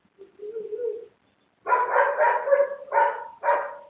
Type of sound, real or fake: real